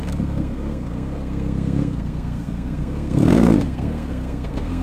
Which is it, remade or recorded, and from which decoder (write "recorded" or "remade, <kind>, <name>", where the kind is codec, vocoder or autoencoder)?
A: remade, codec, SNAC